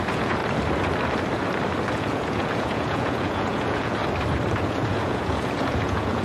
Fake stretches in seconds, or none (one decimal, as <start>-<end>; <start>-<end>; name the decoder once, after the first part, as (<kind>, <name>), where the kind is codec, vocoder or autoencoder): 0.0-0.4 (vocoder, Vocos); 1.9-4.0; 4.5-6.2